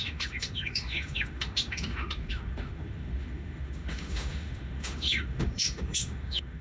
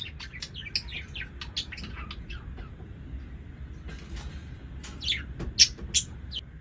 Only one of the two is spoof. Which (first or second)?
first